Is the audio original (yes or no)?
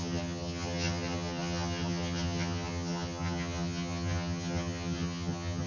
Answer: no